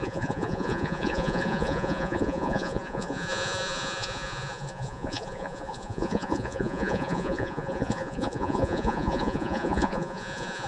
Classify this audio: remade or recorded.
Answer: remade